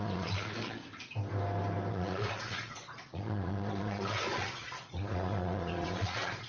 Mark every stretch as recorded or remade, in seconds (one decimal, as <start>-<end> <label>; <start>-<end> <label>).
0.0-0.8 remade; 0.8-1.9 recorded; 1.9-6.5 remade